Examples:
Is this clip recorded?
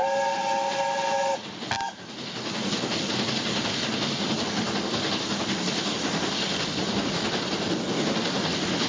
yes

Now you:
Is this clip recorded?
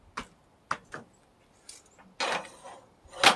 yes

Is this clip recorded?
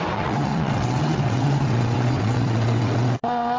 no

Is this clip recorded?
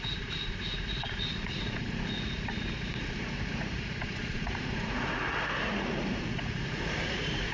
no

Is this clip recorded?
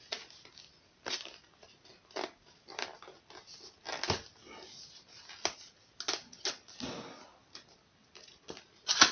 yes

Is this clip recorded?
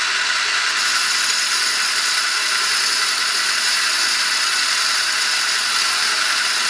yes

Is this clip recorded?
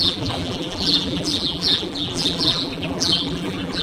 no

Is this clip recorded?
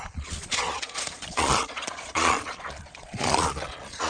no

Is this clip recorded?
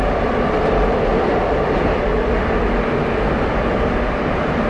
no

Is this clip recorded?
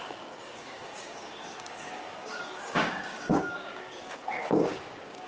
no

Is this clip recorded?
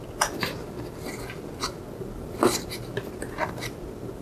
yes